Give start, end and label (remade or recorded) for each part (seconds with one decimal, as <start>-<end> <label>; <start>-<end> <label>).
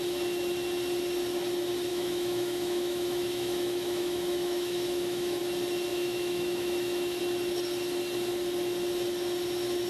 0.0-1.9 recorded; 1.9-5.4 remade; 5.4-5.9 recorded; 5.9-7.2 remade; 7.2-9.9 recorded